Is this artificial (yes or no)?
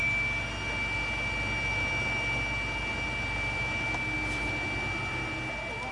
no